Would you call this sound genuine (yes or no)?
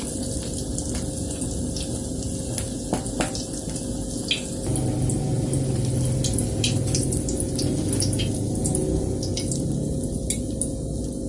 yes